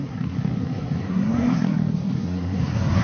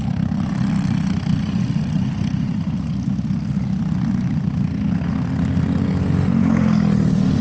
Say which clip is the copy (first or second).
first